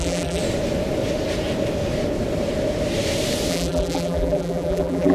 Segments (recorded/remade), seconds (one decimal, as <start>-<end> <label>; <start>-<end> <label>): 0.0-0.4 remade; 0.4-3.5 recorded; 3.5-5.1 remade